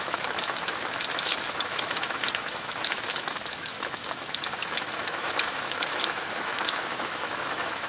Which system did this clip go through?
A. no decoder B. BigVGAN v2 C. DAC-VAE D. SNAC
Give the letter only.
C